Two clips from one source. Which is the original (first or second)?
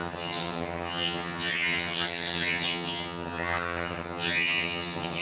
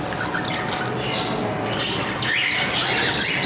second